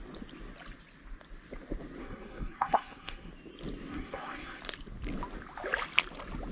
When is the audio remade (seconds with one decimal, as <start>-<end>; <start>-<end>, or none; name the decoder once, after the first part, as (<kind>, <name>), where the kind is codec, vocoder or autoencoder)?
2.0-3.3 (codec, SNAC); 3.9-4.6